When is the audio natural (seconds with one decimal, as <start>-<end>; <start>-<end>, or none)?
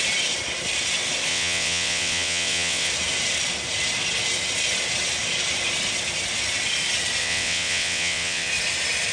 0.0-1.3; 2.9-7.2; 8.5-9.1